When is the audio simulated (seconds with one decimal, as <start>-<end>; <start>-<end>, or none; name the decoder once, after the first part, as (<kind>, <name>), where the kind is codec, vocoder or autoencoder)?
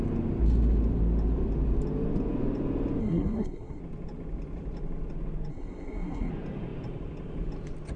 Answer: 3.0-3.8 (codec, SNAC); 5.5-6.3